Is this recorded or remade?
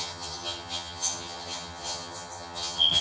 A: remade